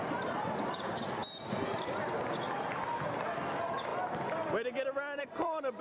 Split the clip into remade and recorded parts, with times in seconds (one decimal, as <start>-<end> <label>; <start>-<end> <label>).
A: 0.0-1.2 remade; 1.2-2.5 recorded; 2.5-3.9 remade; 3.9-5.2 recorded; 5.2-5.8 remade